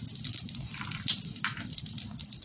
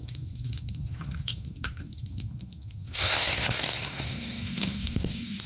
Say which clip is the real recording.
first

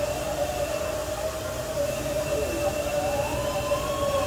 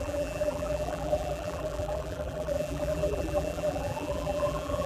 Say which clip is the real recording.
first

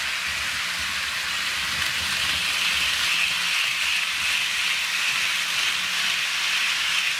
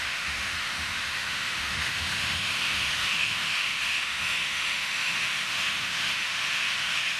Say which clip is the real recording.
first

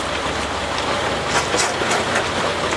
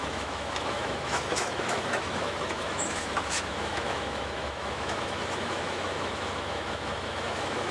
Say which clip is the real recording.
first